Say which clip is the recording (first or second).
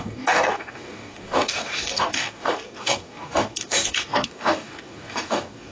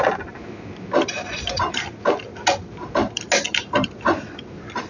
second